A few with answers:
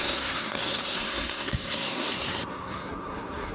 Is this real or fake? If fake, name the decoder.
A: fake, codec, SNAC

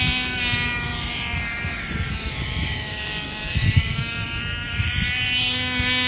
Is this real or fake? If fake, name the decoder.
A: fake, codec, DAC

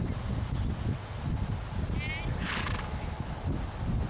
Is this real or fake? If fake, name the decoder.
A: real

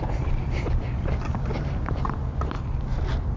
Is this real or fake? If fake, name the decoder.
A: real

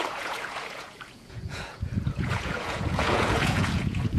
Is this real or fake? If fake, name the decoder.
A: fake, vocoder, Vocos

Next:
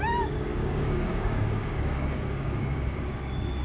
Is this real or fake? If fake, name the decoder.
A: fake, codec, DAC